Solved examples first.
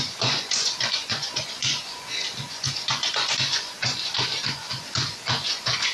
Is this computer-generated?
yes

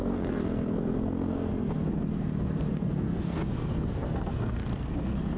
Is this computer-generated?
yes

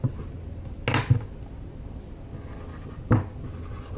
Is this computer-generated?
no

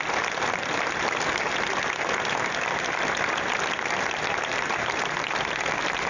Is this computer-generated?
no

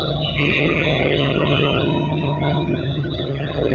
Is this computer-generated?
yes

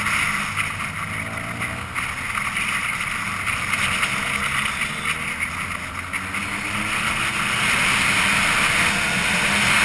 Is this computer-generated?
no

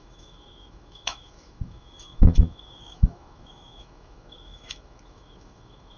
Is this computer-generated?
yes